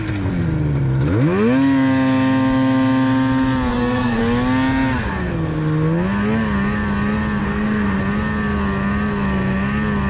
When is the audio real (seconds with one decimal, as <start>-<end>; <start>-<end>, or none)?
0.0-3.7; 4.2-7.4; 8.0-10.1